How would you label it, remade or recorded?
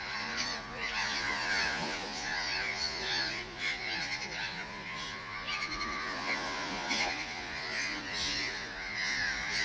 remade